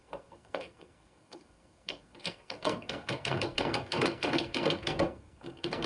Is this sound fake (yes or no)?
yes